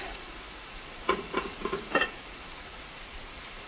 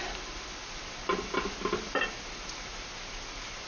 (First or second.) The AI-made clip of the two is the first